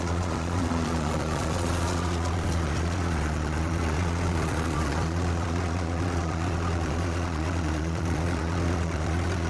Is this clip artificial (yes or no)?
yes